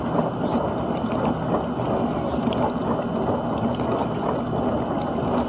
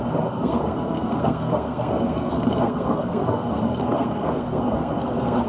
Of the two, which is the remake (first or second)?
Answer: second